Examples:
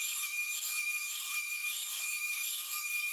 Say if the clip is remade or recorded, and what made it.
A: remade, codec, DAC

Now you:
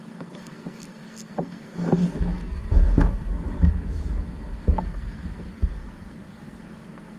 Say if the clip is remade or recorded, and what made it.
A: remade, codec, SNAC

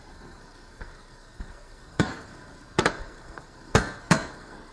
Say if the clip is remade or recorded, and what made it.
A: remade, codec, SNAC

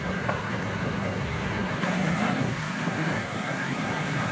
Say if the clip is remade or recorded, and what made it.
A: remade, codec, SNAC